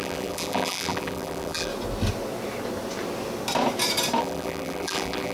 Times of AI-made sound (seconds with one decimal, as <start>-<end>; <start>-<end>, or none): 0.0-1.7; 4.2-5.3